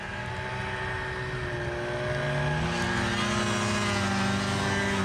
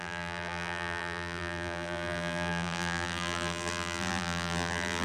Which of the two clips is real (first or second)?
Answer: first